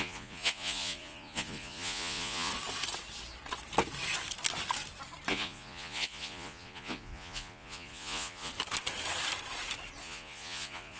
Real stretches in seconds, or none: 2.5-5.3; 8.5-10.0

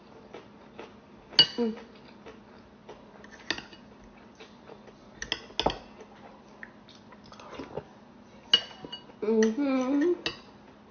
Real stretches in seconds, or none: 0.0-10.9

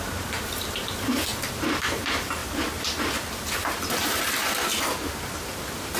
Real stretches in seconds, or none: none

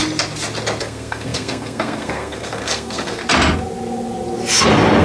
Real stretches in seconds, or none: 0.0-0.8; 3.2-5.0

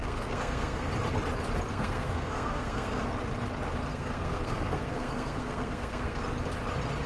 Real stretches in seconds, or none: 0.9-1.7; 3.1-3.9; 6.2-7.1

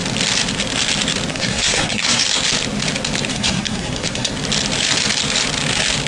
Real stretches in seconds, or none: 0.0-1.3; 2.2-3.3; 4.3-6.1

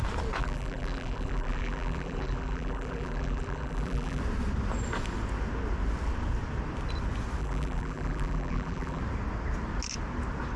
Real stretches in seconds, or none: 0.0-0.4; 4.2-7.4; 9.0-10.6